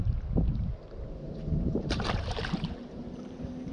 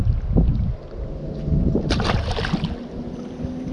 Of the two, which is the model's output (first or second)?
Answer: first